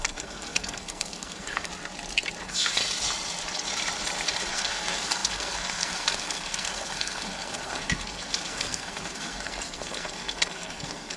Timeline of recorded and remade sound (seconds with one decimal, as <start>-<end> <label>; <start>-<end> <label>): 0.0-1.7 remade; 1.7-2.4 recorded; 2.4-2.8 remade; 2.8-4.5 recorded; 4.5-11.2 remade